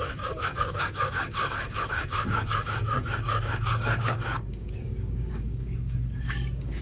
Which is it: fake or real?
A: fake